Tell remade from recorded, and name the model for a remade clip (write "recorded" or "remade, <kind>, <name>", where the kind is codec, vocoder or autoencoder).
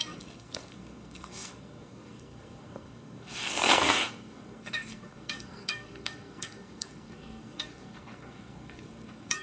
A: remade, codec, SNAC